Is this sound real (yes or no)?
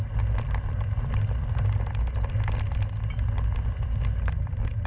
yes